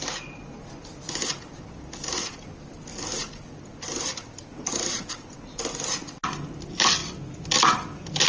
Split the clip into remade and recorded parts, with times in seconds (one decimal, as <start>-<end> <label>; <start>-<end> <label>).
0.0-8.3 recorded